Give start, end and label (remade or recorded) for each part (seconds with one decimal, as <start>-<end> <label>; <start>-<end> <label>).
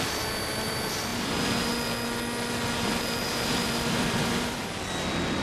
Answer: 0.0-1.1 remade; 1.1-3.2 recorded; 3.2-4.6 remade; 4.6-5.4 recorded